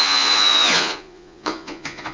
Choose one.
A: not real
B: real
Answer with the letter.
A